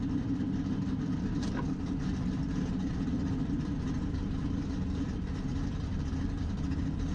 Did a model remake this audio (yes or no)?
yes